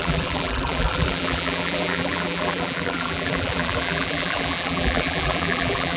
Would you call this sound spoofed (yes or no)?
yes